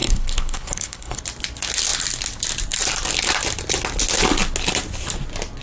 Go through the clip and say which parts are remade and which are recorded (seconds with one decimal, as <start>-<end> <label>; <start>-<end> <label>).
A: 0.0-1.2 remade; 1.2-5.6 recorded